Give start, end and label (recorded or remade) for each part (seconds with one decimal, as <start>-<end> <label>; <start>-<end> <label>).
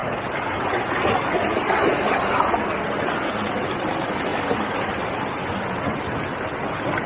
0.0-7.1 recorded